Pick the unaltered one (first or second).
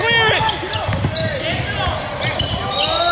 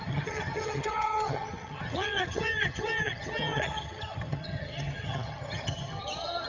first